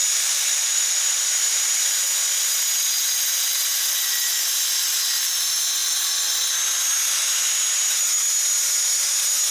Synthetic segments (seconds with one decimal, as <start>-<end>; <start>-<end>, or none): 0.0-1.9